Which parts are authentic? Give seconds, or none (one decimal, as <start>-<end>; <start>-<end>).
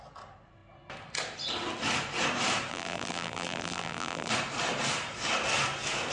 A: 0.0-2.7; 4.3-6.1